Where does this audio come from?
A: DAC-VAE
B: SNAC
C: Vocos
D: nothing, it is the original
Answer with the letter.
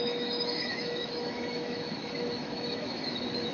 A